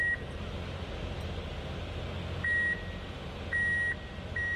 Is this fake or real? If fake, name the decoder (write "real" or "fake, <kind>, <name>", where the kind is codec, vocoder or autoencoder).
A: real